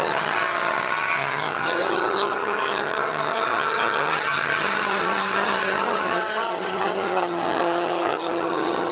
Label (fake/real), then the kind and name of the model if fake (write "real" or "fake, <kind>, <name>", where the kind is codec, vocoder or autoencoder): fake, vocoder, HiFi-GAN